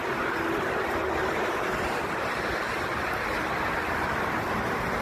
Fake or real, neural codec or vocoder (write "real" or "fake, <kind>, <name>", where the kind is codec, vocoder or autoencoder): real